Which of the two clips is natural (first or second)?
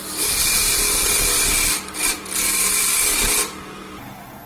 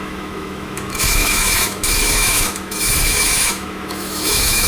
first